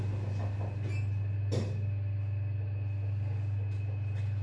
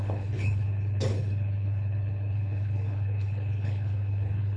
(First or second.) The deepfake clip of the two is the second